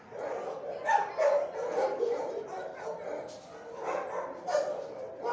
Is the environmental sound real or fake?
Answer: real